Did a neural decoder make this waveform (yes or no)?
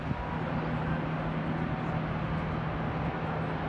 no